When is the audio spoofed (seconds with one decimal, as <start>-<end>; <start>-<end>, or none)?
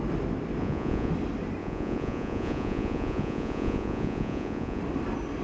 0.6-1.1; 1.6-4.8